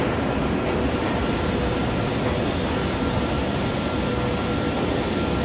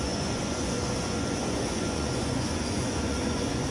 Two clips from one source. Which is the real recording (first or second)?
first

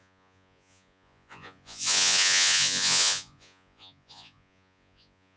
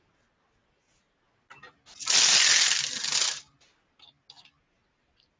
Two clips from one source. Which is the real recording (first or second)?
second